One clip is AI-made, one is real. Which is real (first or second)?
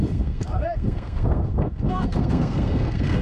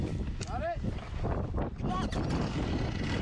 second